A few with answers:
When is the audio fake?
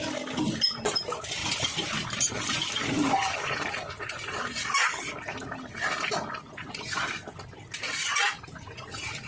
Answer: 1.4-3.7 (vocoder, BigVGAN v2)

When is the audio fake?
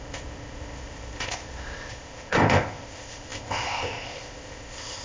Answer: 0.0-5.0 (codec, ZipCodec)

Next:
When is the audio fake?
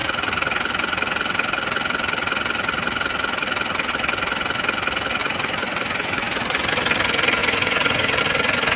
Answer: 5.2-6.7 (vocoder, Vocos); 7.4-8.2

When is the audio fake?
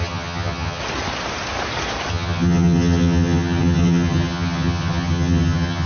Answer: 0.0-0.8 (vocoder, HiFi-GAN); 2.1-5.9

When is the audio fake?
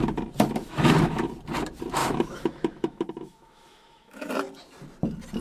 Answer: 0.6-1.3 (autoencoder, DAC-VAE); 2.0-4.3